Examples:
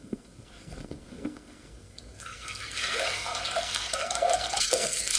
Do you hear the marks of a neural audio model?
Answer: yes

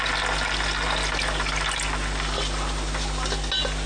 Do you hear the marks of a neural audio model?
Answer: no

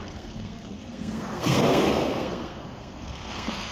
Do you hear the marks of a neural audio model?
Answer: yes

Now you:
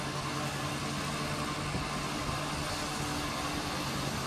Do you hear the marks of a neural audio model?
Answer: no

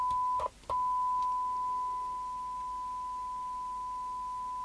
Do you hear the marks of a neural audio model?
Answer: no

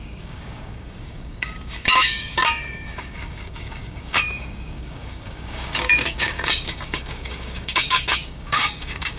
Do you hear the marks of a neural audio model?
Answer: yes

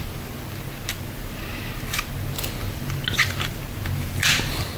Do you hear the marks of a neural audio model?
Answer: no